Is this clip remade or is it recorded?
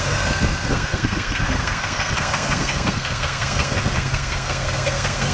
remade